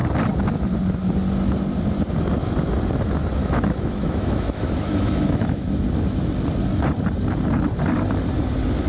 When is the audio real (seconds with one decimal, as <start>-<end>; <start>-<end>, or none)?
0.0-3.4; 5.8-8.9